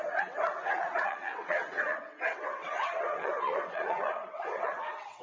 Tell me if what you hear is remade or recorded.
remade